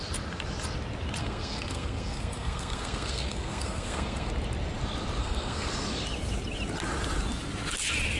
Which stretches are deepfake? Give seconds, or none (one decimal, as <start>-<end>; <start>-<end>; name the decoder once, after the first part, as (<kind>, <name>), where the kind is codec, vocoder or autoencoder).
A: 1.2-4.3 (codec, SNAC); 5.2-5.7